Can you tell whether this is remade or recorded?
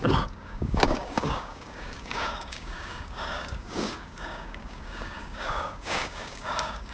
remade